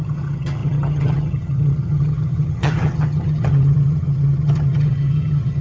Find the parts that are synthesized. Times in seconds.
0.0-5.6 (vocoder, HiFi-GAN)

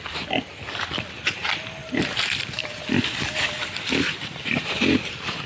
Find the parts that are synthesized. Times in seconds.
1.8-5.1 (vocoder, BigVGAN v2)

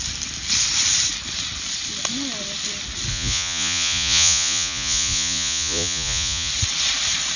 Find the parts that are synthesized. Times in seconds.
3.1-6.5 (vocoder, Vocos)

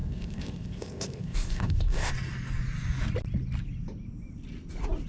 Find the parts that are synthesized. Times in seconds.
0.0-2.1 (codec, ZipCodec)

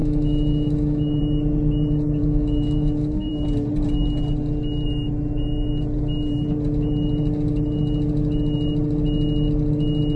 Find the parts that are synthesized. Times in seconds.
0.0-1.2 (autoencoder, DAC-VAE); 2.2-3.3

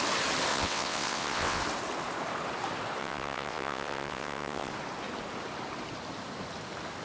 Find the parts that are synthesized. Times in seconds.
0.5-1.6 (vocoder, WaveNeXt); 3.0-4.7

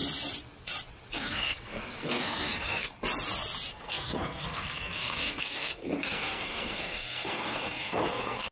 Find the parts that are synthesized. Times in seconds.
1.1-2.9 (codec, SNAC); 3.7-8.5

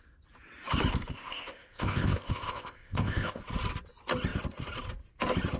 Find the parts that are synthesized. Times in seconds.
1.1-3.4 (codec, ZipCodec)